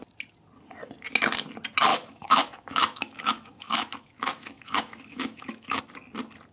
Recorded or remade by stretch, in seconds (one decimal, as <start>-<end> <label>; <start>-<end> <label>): 0.0-1.9 recorded; 1.9-5.8 remade; 5.8-6.5 recorded